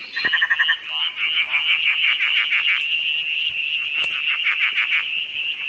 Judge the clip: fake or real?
real